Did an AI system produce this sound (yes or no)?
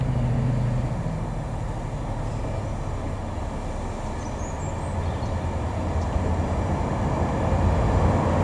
no